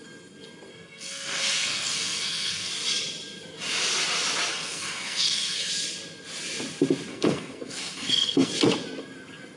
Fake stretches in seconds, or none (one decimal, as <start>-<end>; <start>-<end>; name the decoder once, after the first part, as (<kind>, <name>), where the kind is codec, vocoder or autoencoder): 0.7-2.7 (codec, SNAC); 4.5-5.7; 7.1-8.5